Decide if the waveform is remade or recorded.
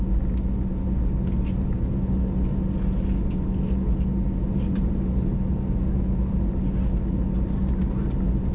recorded